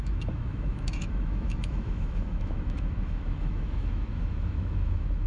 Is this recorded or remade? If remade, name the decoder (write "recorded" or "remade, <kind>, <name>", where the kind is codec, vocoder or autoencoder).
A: remade, autoencoder, DAC-VAE